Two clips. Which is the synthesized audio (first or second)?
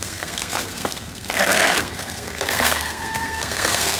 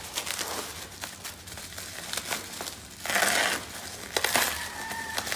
first